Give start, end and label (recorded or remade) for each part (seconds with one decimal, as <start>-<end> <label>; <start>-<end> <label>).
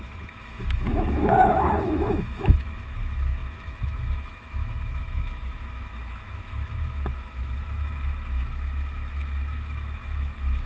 0.0-10.7 remade